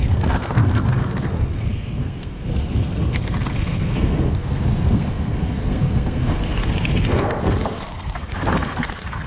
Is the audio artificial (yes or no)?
yes